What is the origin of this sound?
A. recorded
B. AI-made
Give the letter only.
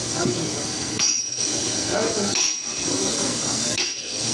B